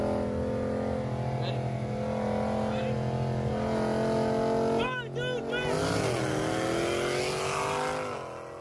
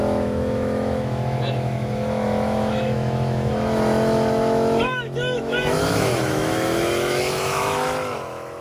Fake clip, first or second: second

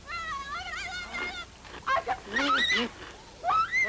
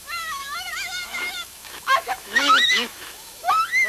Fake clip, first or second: second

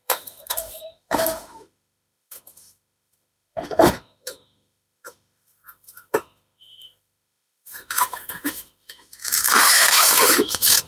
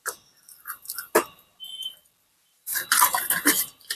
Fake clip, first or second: first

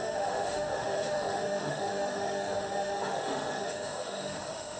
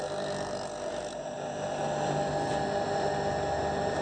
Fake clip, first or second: first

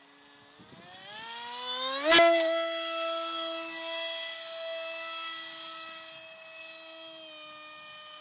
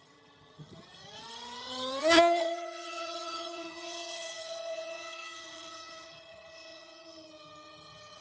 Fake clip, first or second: second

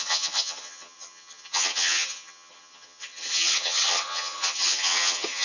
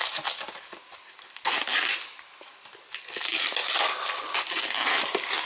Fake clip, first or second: first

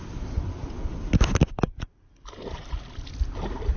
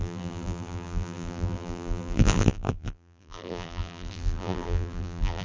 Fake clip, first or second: second